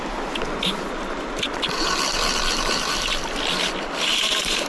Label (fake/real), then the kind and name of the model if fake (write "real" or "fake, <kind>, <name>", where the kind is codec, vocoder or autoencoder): real